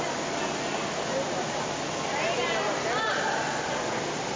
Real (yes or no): yes